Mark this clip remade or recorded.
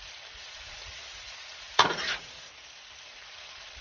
remade